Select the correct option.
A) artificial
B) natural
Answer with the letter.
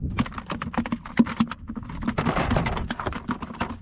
B